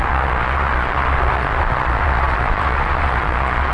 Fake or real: fake